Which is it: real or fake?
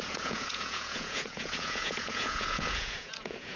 fake